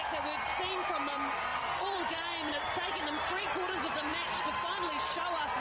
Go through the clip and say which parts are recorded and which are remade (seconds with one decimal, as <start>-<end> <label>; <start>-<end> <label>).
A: 0.0-1.5 recorded; 1.5-2.1 remade; 2.1-5.6 recorded

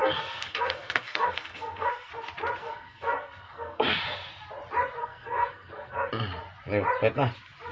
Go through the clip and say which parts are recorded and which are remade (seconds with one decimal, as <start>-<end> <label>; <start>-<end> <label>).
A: 0.0-2.1 remade; 2.1-2.6 recorded; 2.6-4.0 remade; 4.0-5.0 recorded; 5.0-6.1 remade; 6.1-7.7 recorded

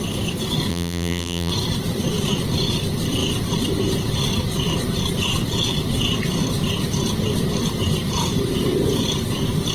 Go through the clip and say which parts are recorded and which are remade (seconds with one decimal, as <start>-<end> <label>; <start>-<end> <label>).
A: 0.0-0.7 recorded; 0.7-1.5 remade; 1.5-9.7 recorded

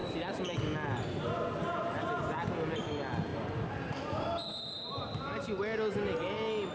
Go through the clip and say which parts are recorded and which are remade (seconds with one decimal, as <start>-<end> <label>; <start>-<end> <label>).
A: 0.0-0.6 remade; 0.6-3.3 recorded; 3.3-3.9 remade; 3.9-6.7 recorded

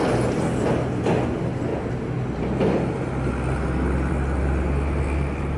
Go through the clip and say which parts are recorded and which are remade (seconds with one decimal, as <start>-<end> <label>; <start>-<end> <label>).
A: 0.0-5.6 recorded